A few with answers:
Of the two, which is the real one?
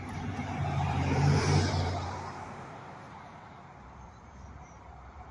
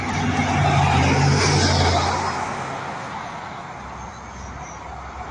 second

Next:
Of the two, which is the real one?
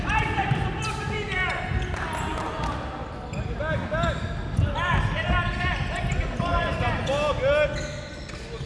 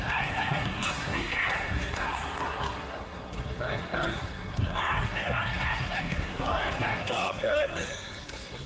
first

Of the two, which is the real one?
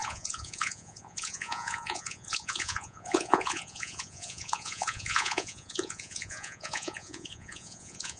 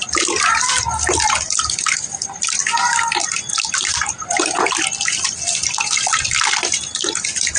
second